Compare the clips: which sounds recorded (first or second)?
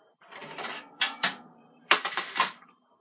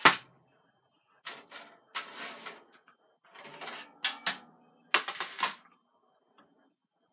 second